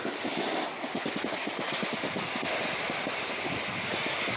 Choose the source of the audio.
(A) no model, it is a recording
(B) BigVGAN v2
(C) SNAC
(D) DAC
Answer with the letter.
A